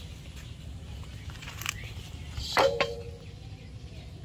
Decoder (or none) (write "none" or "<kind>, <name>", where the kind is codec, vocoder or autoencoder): none